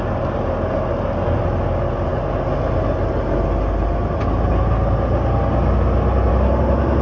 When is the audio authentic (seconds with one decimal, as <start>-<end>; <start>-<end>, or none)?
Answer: 0.0-7.0